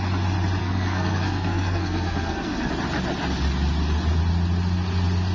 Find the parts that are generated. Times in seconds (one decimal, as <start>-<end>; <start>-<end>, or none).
0.6-2.7